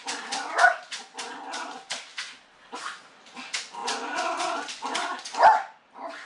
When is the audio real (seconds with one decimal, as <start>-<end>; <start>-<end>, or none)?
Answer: 0.0-6.3